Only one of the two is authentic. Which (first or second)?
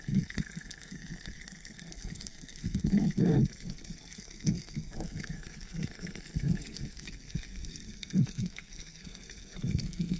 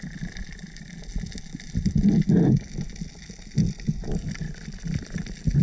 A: second